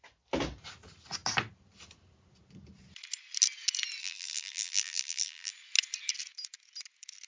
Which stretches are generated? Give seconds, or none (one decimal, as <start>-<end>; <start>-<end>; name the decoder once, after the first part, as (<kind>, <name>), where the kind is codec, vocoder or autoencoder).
4.0-5.5 (vocoder, BigVGAN v2)